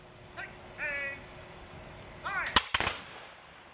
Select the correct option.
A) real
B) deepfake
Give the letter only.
A